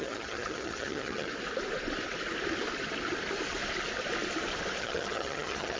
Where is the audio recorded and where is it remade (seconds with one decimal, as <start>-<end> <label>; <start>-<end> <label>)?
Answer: 0.0-1.3 remade; 1.3-4.8 recorded; 4.8-5.8 remade